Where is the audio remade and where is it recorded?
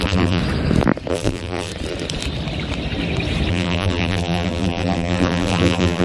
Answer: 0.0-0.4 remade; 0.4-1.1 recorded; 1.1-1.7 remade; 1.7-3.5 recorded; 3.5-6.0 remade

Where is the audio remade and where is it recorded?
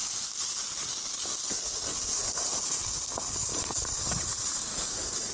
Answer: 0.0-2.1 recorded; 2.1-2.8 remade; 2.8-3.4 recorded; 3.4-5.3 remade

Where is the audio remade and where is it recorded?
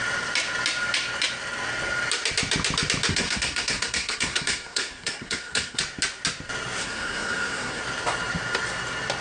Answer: 0.0-3.1 recorded; 3.1-5.8 remade; 5.8-6.8 recorded; 6.8-7.8 remade; 7.8-9.2 recorded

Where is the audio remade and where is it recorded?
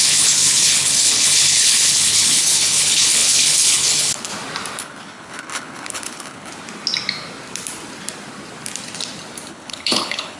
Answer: 0.0-4.3 remade; 4.3-4.8 recorded; 4.8-6.5 remade; 6.5-9.5 recorded; 9.5-10.4 remade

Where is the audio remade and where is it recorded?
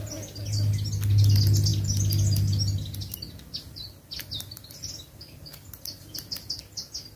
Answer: 0.0-7.2 recorded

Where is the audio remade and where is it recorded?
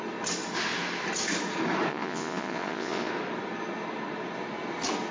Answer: 0.0-1.9 recorded; 1.9-3.1 remade; 3.1-5.1 recorded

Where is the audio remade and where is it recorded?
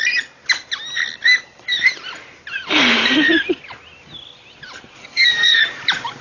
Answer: 0.0-5.0 recorded; 5.0-5.6 remade; 5.6-6.2 recorded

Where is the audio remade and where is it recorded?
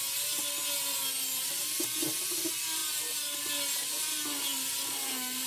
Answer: 0.0-5.5 recorded